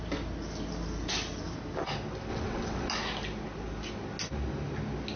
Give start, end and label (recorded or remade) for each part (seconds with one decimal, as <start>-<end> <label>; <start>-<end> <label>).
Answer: 0.0-2.3 recorded; 2.3-2.9 remade; 2.9-5.2 recorded